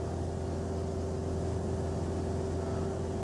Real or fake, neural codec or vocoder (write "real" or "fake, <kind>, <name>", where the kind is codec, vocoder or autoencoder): real